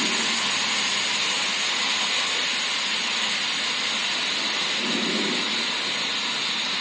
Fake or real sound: real